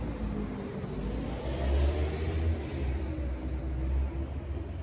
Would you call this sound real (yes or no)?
yes